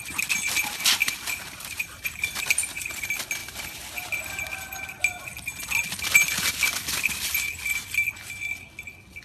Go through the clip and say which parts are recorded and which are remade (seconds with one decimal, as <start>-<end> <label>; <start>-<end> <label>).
0.0-1.0 recorded; 1.0-3.0 remade; 3.0-3.4 recorded; 3.4-4.2 remade; 4.2-9.2 recorded